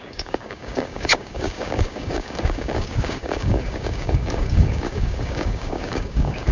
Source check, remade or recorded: remade